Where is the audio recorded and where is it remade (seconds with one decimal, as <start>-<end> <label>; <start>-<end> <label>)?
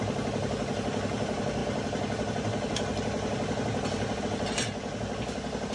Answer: 0.0-5.7 recorded